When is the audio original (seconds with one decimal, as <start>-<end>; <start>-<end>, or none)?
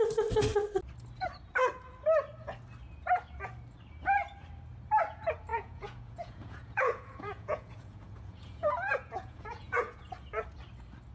0.0-5.5; 10.0-11.1